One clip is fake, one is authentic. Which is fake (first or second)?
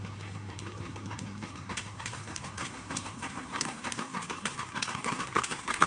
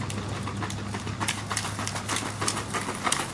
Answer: first